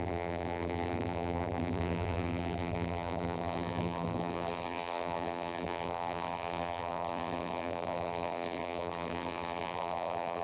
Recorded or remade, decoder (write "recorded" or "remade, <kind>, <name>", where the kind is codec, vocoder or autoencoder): remade, vocoder, BigVGAN v2